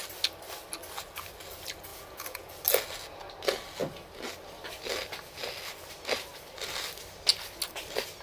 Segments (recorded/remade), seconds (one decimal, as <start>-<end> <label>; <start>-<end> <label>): 0.0-1.9 recorded; 1.9-2.5 remade; 2.5-8.2 recorded

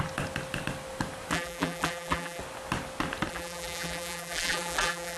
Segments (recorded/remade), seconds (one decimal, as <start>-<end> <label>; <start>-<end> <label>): 0.0-1.3 recorded; 1.3-2.4 remade; 2.4-3.3 recorded; 3.3-5.2 remade